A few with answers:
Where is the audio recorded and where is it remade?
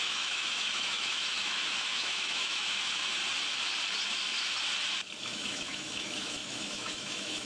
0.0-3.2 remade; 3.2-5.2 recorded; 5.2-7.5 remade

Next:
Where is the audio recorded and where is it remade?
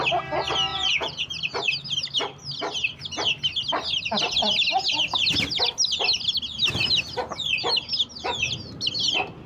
0.0-0.7 recorded; 0.7-1.3 remade; 1.3-9.5 recorded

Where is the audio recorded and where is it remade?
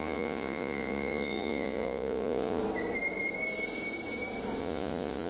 0.0-2.6 remade; 2.6-4.6 recorded; 4.6-5.3 remade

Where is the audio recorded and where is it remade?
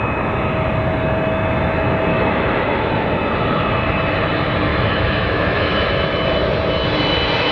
0.0-2.1 recorded; 2.1-2.9 remade; 2.9-4.7 recorded; 4.7-5.9 remade; 5.9-7.5 recorded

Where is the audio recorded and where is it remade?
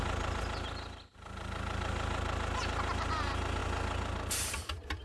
0.0-5.0 recorded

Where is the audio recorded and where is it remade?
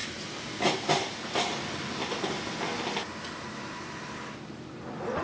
0.0-0.9 recorded; 0.9-2.0 remade; 2.0-5.2 recorded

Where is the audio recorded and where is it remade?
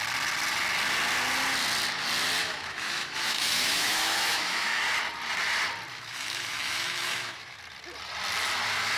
0.0-2.4 recorded; 2.4-4.8 remade; 4.8-5.9 recorded; 5.9-7.6 remade; 7.6-9.0 recorded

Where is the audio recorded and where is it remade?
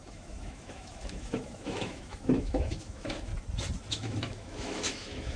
0.0-3.3 remade; 3.3-3.9 recorded; 3.9-5.4 remade